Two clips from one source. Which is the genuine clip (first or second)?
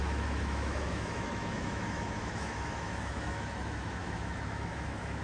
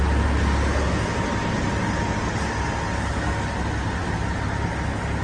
second